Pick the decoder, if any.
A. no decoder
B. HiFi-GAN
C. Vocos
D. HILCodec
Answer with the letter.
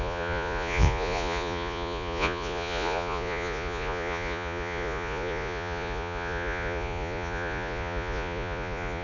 C